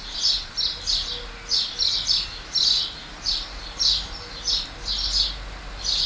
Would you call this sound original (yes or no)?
yes